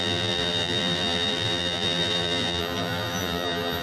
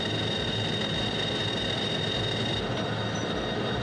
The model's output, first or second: first